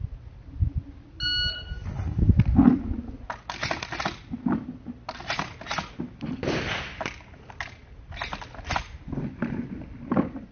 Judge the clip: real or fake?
real